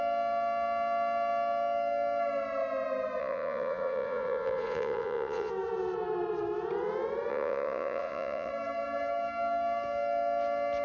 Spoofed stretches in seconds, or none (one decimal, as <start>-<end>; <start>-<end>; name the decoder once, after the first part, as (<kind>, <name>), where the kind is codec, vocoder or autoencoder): 3.2-5.5 (vocoder, Vocos); 7.3-8.5